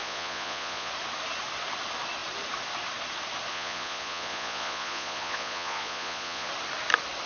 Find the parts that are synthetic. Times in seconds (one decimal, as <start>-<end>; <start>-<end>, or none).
0.0-0.9; 3.5-6.5